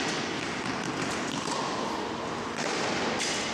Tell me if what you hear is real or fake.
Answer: real